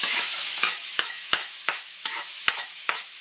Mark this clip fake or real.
fake